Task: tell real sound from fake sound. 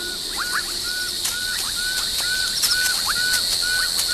real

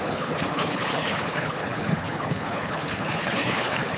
fake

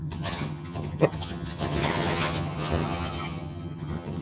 fake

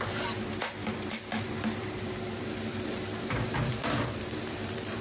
fake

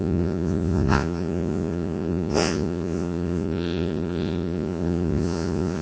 fake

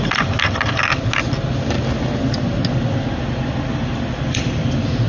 real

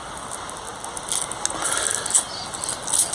real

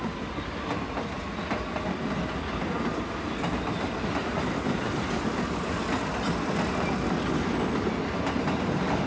real